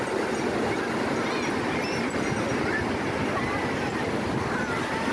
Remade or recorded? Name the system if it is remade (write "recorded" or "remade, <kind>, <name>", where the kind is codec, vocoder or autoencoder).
recorded